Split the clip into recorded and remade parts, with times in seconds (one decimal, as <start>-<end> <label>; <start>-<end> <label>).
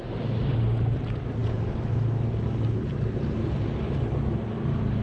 0.0-5.0 recorded